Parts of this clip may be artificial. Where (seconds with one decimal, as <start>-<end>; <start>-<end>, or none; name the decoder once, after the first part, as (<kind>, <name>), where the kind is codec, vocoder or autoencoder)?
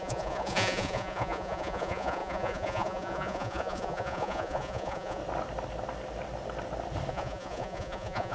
0.0-5.2 (vocoder, Vocos); 7.1-8.3